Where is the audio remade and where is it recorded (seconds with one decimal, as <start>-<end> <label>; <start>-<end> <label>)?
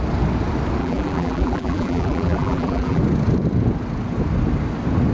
0.0-0.8 recorded; 0.8-3.0 remade; 3.0-5.1 recorded